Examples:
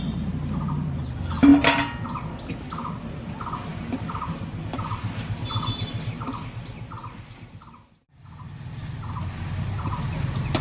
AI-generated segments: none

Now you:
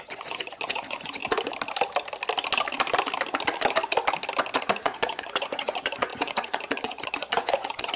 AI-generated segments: 0.0-1.2 (vocoder, Vocos); 4.6-8.0